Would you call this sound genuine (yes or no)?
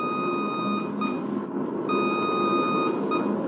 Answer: yes